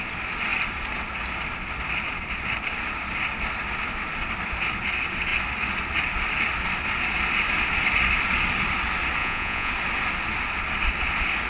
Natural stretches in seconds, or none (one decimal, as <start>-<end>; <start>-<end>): 0.0-9.2; 9.7-11.5